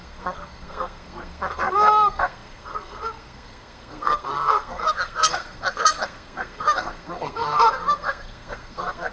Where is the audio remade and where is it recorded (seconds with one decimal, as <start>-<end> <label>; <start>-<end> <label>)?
0.0-9.1 remade